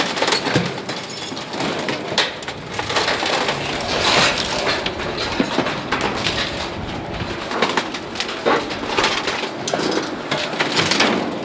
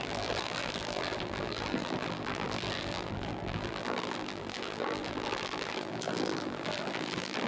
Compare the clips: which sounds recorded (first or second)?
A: first